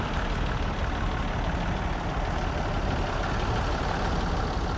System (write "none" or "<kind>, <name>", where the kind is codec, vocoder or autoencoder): none